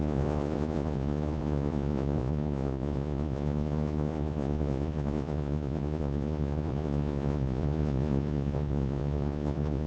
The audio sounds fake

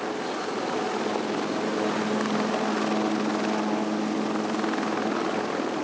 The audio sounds real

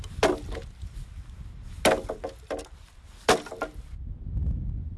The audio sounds real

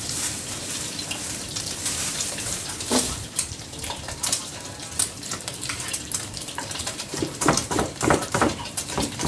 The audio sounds fake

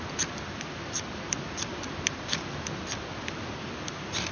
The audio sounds real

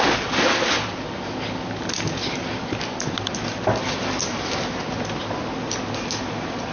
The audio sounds real